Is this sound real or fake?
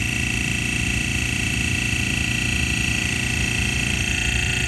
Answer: fake